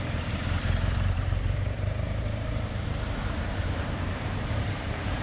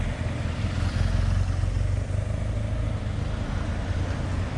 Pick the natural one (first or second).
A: second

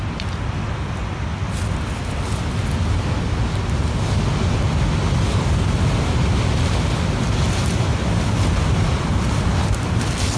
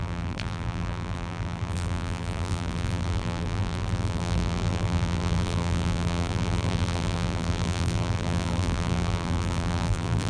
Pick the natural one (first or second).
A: first